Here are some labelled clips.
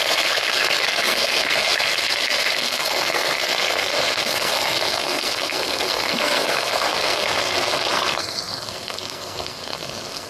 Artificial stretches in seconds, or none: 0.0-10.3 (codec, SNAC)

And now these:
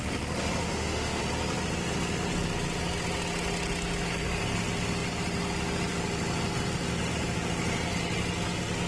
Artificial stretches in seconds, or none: 0.6-1.2 (autoencoder, DAC-VAE)

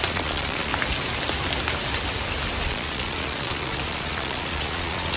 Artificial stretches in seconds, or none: 0.0-0.7 (vocoder, Vocos); 2.6-5.2

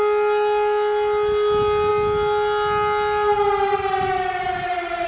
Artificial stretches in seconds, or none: none

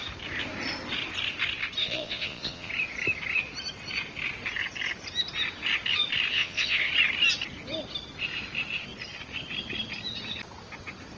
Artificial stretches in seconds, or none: 1.8-2.7 (vocoder, Vocos); 6.3-6.9